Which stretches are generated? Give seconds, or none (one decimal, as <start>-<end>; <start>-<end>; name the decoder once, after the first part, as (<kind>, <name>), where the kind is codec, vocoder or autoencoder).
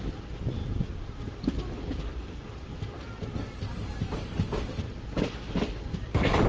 0.6-1.2 (vocoder, BigVGAN v2); 2.1-4.1